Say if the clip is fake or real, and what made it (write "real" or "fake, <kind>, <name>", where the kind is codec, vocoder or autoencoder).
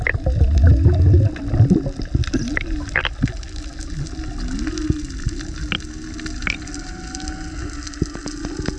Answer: real